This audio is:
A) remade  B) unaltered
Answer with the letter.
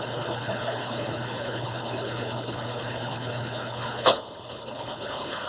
A